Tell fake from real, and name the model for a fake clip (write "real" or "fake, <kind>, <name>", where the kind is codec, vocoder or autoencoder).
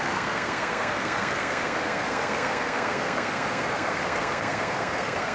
fake, codec, SNAC